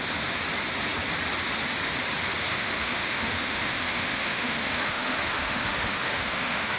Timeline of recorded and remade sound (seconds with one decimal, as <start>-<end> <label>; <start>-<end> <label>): 0.0-2.5 recorded; 2.5-6.8 remade